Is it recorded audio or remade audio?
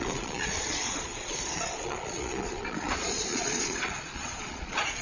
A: remade